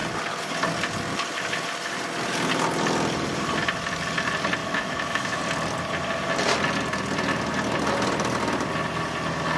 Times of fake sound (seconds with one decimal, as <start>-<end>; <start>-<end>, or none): 4.6-5.4